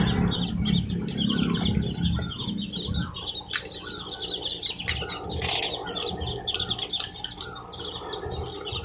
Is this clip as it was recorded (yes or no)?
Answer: yes